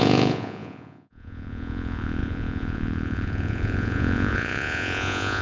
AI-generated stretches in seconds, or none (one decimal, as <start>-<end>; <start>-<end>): 0.0-5.4